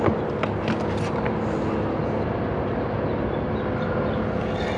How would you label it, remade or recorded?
recorded